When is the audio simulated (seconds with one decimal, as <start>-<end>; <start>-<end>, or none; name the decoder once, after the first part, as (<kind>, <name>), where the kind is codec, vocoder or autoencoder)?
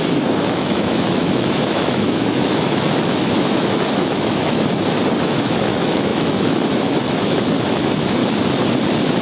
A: 0.0-4.7 (autoencoder, DAC-VAE); 5.2-8.2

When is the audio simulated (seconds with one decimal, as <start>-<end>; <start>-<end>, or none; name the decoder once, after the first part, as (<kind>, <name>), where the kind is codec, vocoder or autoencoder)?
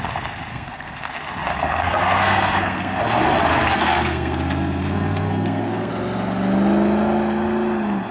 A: 0.5-1.1 (codec, SNAC); 1.5-3.0; 3.5-5.9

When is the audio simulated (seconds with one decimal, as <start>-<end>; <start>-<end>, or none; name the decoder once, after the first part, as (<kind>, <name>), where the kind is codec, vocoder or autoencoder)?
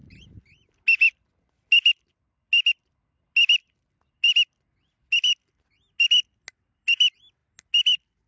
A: none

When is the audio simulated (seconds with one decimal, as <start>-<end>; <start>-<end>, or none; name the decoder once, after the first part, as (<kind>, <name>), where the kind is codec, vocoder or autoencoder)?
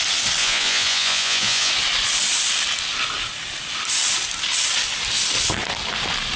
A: 0.4-1.7 (vocoder, Vocos)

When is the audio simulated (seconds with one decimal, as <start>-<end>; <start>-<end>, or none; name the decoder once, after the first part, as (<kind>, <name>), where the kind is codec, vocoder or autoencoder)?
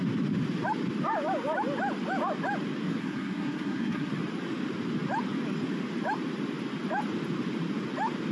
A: 3.0-4.1 (codec, SNAC)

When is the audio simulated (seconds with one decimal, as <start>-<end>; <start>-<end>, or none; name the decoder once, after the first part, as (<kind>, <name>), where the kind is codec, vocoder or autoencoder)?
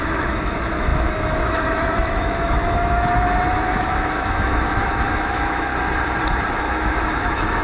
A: 0.0-5.7 (autoencoder, DAC-VAE); 6.6-7.6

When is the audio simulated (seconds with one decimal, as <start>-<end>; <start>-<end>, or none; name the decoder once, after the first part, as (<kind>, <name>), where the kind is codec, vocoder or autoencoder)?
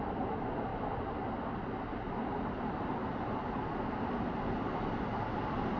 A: none